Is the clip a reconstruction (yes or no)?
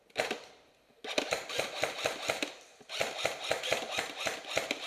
no